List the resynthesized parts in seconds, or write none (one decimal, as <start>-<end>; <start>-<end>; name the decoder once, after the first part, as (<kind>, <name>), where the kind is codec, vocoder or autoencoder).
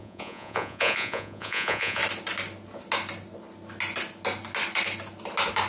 0.0-2.0 (vocoder, Vocos)